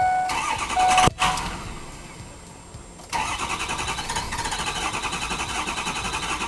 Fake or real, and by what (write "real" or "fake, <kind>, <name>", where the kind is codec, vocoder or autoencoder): real